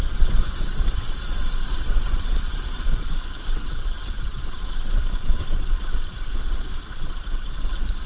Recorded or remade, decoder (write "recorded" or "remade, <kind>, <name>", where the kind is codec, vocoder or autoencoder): remade, vocoder, Vocos